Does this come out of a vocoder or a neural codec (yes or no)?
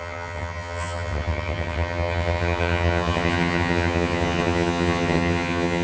yes